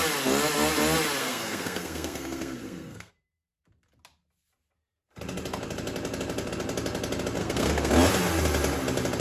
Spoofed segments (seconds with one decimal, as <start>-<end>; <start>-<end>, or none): 1.2-3.1; 7.4-7.9